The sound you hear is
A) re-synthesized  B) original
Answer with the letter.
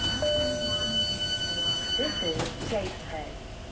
B